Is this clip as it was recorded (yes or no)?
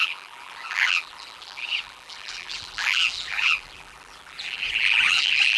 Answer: no